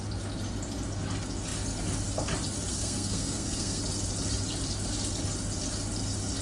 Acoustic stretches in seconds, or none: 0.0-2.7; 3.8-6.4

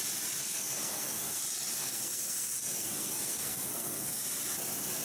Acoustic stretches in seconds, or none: 0.0-0.4; 1.4-1.8; 4.3-5.0

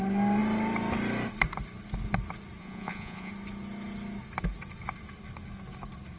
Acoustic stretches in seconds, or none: 0.0-2.6; 3.3-6.2

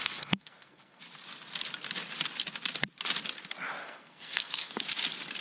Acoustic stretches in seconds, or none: 1.0-3.8; 4.7-5.4

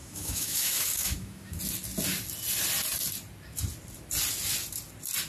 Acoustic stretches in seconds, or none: 1.6-5.3